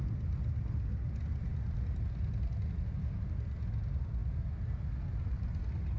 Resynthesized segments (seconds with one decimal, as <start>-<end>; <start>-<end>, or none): none